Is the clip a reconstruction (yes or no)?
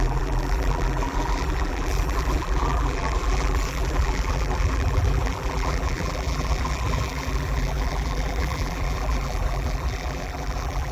yes